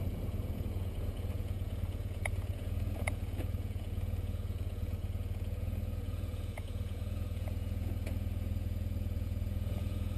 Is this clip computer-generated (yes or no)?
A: yes